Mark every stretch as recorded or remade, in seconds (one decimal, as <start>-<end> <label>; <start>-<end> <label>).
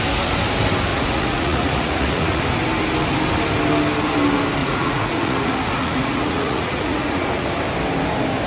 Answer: 0.0-0.9 recorded; 0.9-2.4 remade; 2.4-4.6 recorded; 4.6-7.5 remade; 7.5-8.5 recorded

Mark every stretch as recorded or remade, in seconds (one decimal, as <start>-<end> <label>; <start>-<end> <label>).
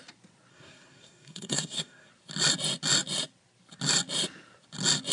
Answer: 0.0-0.5 recorded; 0.5-2.1 remade; 2.1-5.1 recorded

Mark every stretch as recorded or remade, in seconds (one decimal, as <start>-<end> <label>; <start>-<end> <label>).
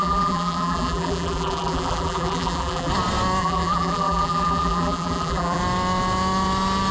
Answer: 0.0-2.9 remade; 2.9-3.4 recorded; 3.4-5.6 remade; 5.6-6.9 recorded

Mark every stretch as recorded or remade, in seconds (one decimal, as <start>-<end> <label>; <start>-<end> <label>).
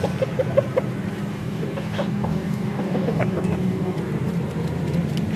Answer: 0.0-1.3 recorded; 1.3-4.0 remade; 4.0-5.4 recorded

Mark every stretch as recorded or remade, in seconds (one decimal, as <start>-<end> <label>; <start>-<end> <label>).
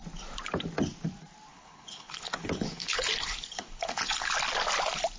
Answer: 0.0-1.5 recorded; 1.5-4.3 remade; 4.3-5.2 recorded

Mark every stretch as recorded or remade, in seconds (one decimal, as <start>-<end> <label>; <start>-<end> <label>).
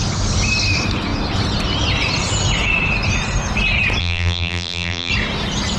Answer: 0.0-4.0 recorded; 4.0-5.1 remade; 5.1-5.8 recorded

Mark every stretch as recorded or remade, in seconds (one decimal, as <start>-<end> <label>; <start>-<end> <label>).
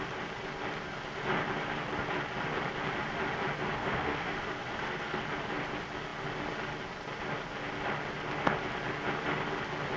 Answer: 0.0-3.8 recorded; 3.8-5.2 remade; 5.2-10.0 recorded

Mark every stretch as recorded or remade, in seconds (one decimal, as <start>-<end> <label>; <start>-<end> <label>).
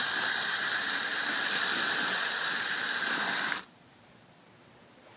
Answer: 0.0-5.2 recorded